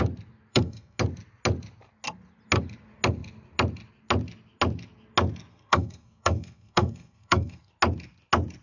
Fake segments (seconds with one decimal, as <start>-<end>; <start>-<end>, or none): 0.5-1.0; 5.5-7.7